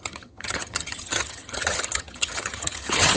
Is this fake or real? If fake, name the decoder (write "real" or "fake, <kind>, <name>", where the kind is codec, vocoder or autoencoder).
fake, vocoder, HiFi-GAN